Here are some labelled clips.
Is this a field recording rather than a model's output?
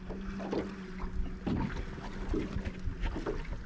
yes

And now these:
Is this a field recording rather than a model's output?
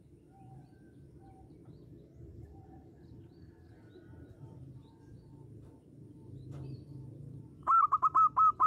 no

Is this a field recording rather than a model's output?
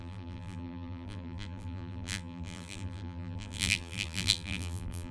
no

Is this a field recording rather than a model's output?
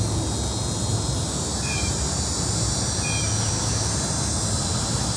yes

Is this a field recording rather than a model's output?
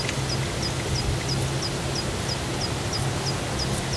yes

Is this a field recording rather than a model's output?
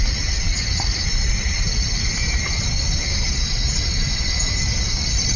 no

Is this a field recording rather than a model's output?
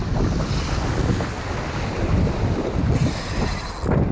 yes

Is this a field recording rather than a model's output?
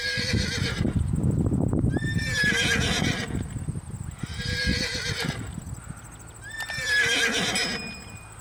yes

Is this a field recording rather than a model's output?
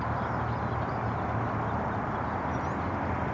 yes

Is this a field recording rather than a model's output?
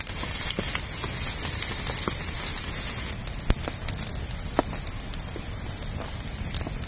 yes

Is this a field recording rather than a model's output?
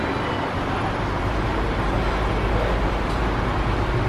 yes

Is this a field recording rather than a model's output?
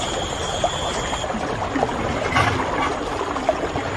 yes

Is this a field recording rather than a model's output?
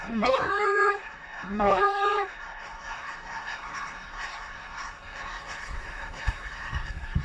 no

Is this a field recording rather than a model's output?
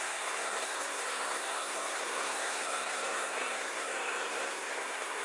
no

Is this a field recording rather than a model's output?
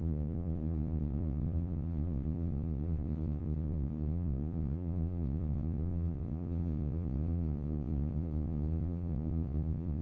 no